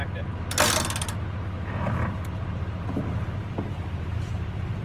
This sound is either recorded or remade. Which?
recorded